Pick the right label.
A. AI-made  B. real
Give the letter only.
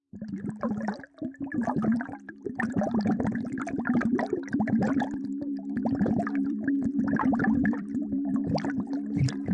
A